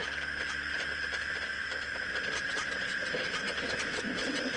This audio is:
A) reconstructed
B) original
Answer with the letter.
A